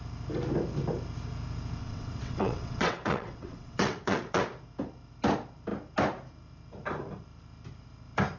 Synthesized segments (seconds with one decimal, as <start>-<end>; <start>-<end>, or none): 1.8-4.4